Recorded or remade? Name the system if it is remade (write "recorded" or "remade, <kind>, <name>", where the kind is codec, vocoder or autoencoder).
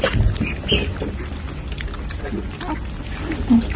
recorded